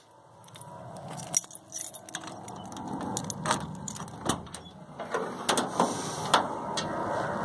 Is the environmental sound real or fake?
real